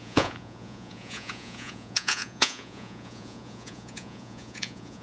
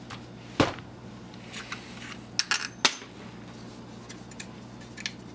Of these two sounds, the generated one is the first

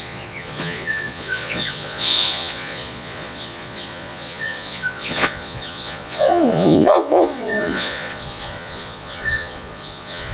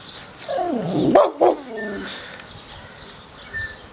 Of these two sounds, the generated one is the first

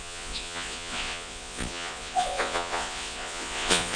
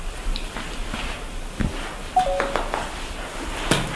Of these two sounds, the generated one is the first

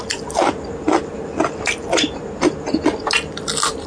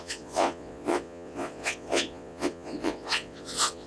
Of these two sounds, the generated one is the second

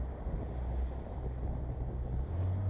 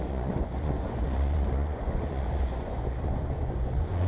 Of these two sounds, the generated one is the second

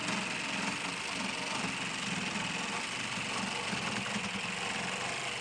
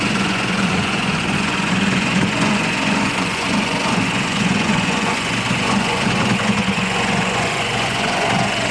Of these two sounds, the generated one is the second